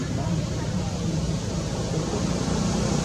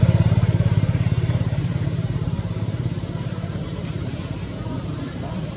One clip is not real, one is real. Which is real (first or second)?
first